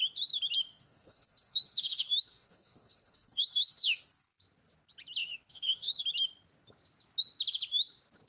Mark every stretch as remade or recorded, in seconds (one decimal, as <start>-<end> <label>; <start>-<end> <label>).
0.0-0.7 recorded; 0.7-4.0 remade; 4.0-5.2 recorded; 5.2-6.0 remade; 6.0-8.3 recorded